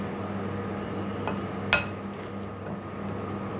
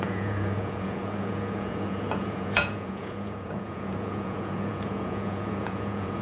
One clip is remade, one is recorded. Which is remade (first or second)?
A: second